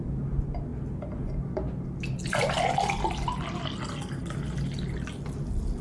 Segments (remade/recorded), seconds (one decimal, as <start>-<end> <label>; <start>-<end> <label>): 0.0-5.8 recorded